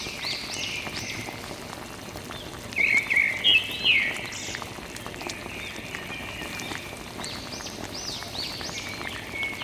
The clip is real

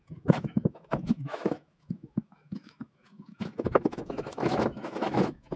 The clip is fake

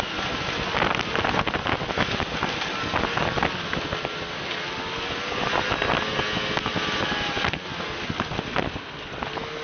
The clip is real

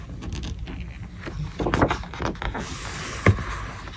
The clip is real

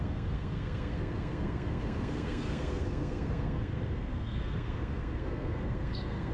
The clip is fake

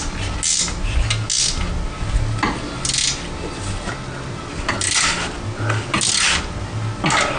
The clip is real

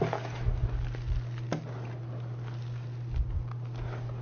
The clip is real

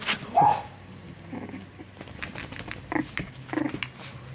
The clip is real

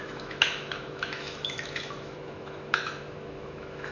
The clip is fake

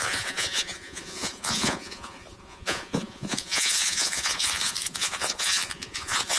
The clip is fake